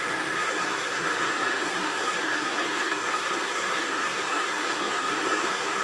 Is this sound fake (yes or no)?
yes